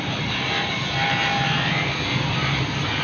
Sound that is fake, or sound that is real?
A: fake